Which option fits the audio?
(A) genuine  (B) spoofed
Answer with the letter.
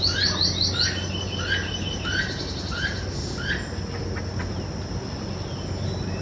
A